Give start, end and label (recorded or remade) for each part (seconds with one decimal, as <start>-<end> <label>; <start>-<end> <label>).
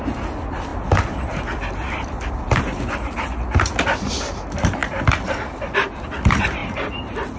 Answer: 0.0-7.4 recorded